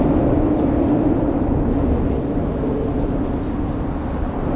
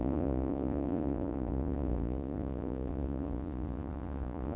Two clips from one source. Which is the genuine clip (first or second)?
first